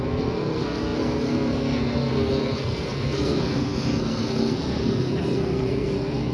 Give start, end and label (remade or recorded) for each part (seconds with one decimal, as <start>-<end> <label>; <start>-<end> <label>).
0.0-6.3 remade

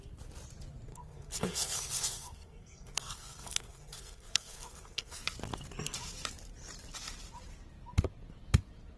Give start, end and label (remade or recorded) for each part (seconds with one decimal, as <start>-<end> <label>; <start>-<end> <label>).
0.0-0.9 recorded; 0.9-5.2 remade; 5.2-9.0 recorded

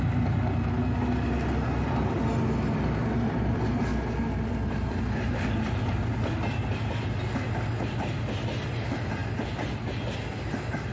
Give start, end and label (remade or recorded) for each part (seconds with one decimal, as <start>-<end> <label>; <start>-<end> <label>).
0.0-10.9 recorded

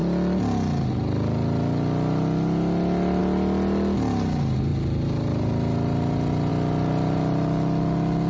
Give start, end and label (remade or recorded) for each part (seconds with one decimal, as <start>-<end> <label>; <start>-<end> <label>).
0.0-8.3 recorded

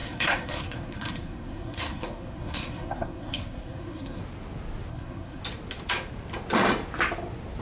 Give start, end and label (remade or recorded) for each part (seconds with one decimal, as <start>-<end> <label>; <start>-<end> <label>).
0.0-4.2 remade; 4.2-4.9 recorded; 4.9-5.4 remade; 5.4-7.6 recorded

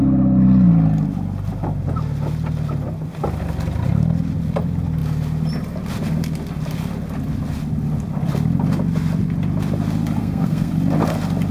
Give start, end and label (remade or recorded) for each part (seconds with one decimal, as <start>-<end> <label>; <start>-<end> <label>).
0.0-10.2 recorded; 10.2-10.7 remade; 10.7-11.5 recorded

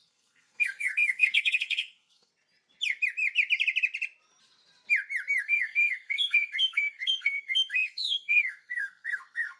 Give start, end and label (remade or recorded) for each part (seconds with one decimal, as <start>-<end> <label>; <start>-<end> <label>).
0.0-2.3 remade; 2.3-5.4 recorded; 5.4-9.6 remade

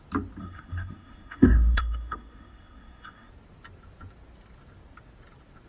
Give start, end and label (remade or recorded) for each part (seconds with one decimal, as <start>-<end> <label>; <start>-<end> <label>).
0.0-0.4 recorded; 0.4-3.3 remade; 3.3-5.7 recorded